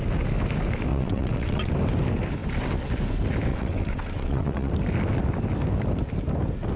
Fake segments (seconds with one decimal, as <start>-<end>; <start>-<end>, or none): 0.9-1.7; 3.5-4.7